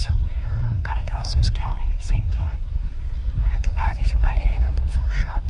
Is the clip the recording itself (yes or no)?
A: no